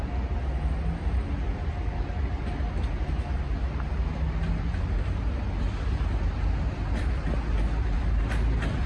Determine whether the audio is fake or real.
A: real